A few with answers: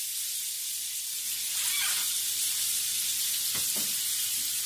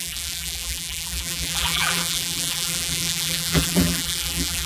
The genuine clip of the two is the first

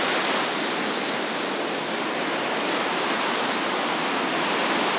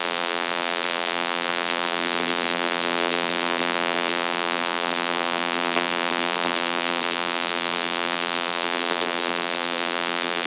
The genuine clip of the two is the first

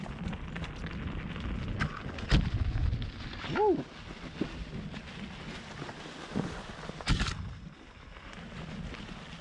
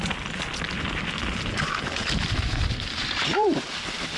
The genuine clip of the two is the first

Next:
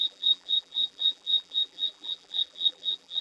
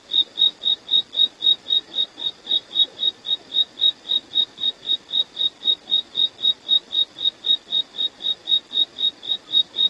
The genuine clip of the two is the second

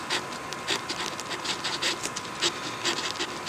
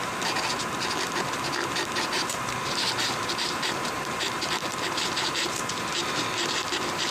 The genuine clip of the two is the first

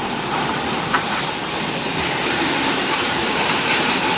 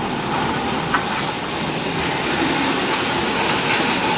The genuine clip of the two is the second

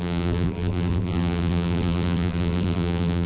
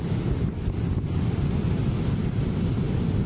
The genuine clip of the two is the second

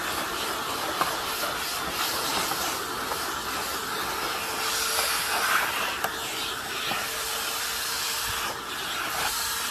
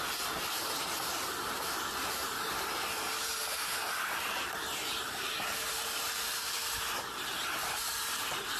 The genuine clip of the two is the first